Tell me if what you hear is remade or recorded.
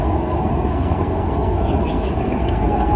remade